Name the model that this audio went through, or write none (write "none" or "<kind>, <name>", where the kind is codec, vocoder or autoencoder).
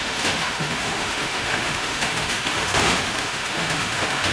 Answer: autoencoder, DAC-VAE